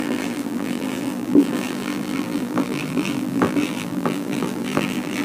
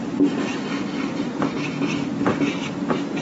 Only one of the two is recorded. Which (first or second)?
second